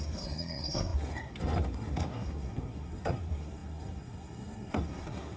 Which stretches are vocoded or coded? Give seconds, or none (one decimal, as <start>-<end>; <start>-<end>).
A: 0.0-5.4